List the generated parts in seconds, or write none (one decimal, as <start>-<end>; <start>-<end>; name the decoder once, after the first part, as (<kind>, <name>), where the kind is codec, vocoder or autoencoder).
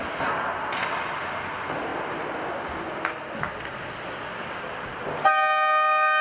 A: none